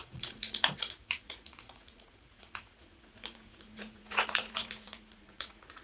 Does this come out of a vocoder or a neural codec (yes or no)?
yes